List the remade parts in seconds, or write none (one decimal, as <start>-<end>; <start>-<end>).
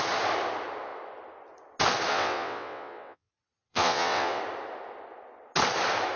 2.1-3.3; 3.7-4.4